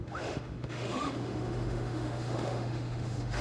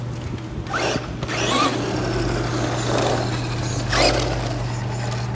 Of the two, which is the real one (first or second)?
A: second